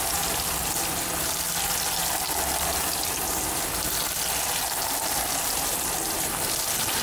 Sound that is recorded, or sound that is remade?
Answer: recorded